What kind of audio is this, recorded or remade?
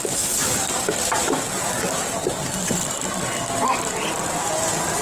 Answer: remade